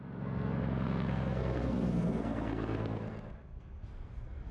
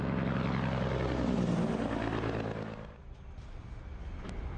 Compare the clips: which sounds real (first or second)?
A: second